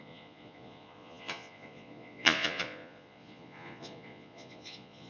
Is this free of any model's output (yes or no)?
no